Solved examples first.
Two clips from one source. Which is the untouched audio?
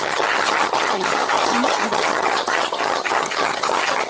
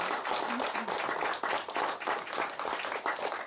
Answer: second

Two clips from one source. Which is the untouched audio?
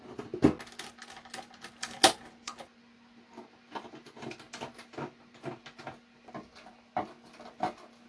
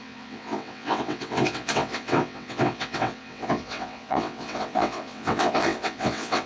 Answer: first